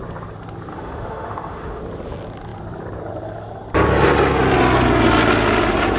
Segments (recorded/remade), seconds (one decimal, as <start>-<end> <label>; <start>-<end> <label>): 0.0-0.7 recorded; 0.7-1.8 remade; 1.8-6.0 recorded